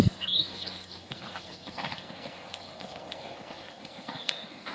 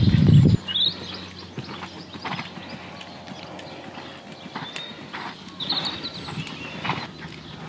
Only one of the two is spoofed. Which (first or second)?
first